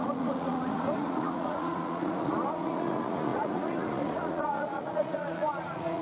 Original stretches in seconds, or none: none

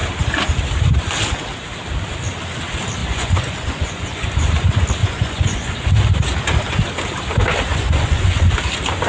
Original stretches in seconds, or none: 0.0-3.0; 4.5-5.0; 5.9-7.7; 8.5-9.1

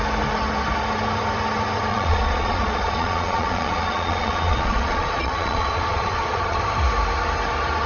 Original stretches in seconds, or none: 0.0-1.9; 6.6-7.9

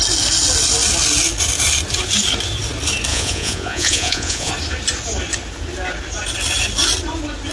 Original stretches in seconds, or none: 0.0-3.1; 4.5-7.5